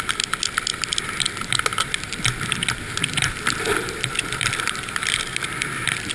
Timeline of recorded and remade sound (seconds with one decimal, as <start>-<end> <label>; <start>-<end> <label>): 0.0-1.7 recorded; 1.7-5.4 remade; 5.4-6.1 recorded